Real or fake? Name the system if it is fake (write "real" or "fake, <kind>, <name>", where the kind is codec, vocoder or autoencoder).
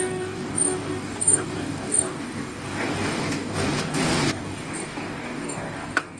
fake, codec, DAC